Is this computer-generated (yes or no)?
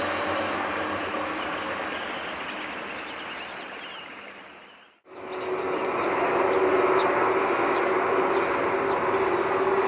no